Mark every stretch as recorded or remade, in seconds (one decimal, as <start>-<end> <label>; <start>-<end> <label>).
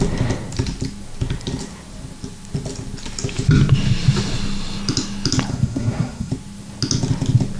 0.0-5.5 recorded; 5.5-6.3 remade; 6.3-7.6 recorded